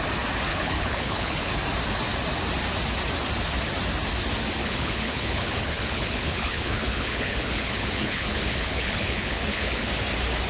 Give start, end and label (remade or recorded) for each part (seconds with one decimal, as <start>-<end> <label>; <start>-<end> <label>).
0.0-0.5 recorded; 0.5-1.5 remade; 1.5-4.6 recorded; 4.6-9.9 remade; 9.9-10.5 recorded